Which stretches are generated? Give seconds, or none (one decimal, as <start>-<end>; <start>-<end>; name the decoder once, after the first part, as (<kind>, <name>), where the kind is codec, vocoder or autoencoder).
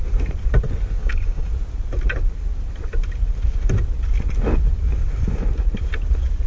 1.0-1.5 (codec, DAC)